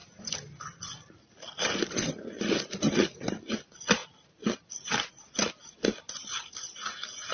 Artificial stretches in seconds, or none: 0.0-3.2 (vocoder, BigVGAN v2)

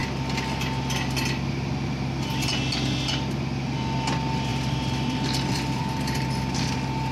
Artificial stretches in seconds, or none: 4.5-6.0 (vocoder, BigVGAN v2)